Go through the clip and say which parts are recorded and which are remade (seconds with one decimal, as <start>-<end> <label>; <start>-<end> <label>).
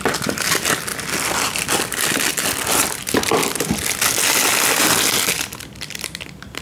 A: 0.0-6.6 recorded